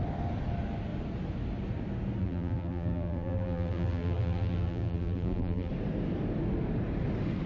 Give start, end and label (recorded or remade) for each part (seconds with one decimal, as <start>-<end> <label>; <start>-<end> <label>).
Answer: 0.0-2.2 recorded; 2.2-5.7 remade; 5.7-7.5 recorded